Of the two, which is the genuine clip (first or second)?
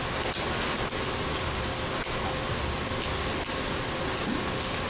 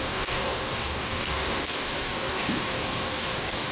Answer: first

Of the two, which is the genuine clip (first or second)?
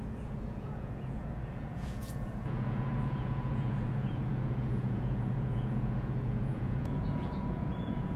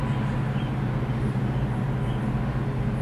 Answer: second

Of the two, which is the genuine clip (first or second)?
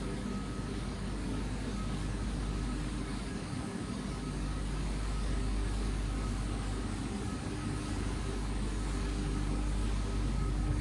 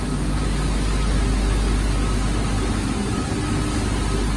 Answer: second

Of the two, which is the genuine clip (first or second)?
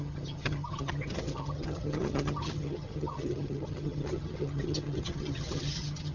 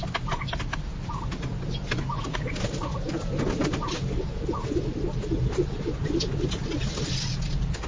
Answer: second